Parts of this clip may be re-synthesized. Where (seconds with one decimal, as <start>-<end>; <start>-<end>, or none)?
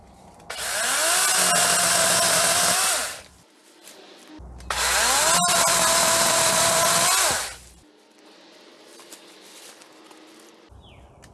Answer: none